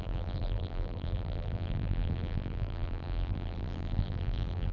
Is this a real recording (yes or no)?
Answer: no